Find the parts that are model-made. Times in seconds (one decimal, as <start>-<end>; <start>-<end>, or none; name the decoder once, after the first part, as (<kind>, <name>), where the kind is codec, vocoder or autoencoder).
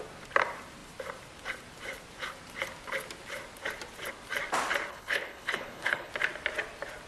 4.9-6.1 (codec, HILCodec)